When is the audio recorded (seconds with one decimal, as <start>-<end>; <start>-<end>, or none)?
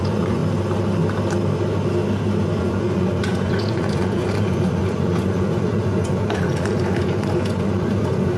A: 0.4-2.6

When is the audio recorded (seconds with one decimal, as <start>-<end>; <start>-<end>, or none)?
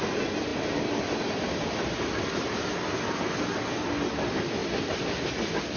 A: 0.0-5.8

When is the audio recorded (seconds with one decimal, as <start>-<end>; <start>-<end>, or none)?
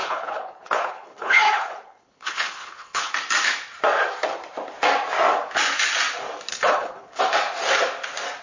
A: 3.1-6.5; 7.2-8.4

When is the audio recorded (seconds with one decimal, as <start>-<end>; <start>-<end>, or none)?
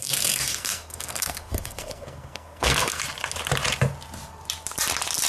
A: 3.0-5.3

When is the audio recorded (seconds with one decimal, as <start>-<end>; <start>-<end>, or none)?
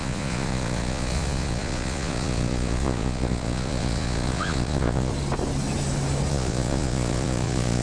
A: 5.1-6.3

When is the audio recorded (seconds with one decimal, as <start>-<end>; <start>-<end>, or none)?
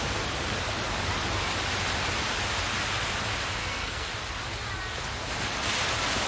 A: 0.0-3.6; 4.1-6.3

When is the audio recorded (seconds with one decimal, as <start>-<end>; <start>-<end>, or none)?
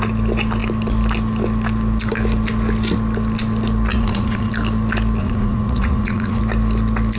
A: 0.0-3.9; 4.5-5.2; 6.4-7.2